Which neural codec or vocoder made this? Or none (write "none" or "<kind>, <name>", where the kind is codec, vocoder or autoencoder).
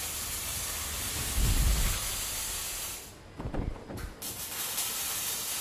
none